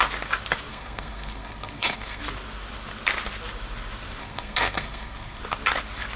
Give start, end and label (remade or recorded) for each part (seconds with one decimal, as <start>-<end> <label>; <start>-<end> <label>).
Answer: 0.0-0.7 recorded; 0.7-2.2 remade; 2.2-4.2 recorded; 4.2-5.4 remade; 5.4-6.2 recorded